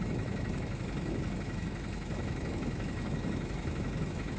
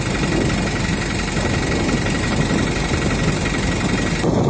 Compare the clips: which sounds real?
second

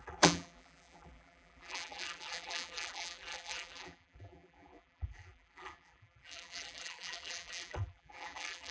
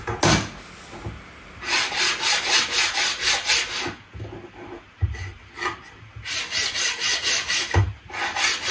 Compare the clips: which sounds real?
second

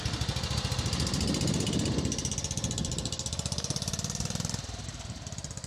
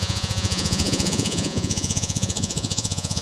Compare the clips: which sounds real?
first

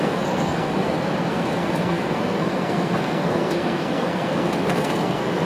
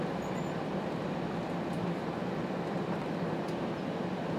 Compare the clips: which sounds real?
second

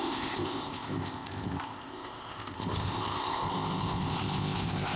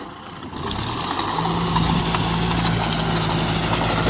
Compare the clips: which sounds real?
second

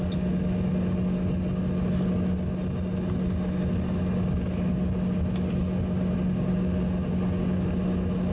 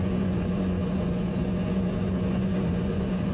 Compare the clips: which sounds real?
first